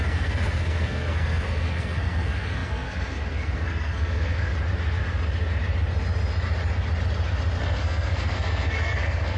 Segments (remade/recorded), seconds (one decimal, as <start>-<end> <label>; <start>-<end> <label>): 0.0-4.5 remade; 4.5-7.6 recorded; 7.6-9.4 remade

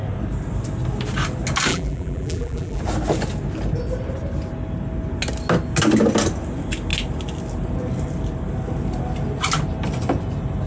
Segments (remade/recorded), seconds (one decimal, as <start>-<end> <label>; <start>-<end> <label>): 0.0-1.7 recorded; 1.7-2.8 remade; 2.8-10.7 recorded